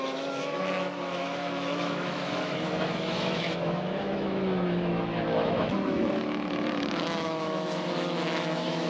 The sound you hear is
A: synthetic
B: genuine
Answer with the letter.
A